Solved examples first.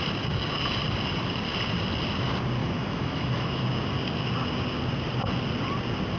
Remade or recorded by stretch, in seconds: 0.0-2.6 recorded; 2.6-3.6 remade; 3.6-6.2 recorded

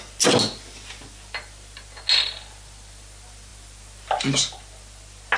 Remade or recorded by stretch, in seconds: 0.0-5.4 recorded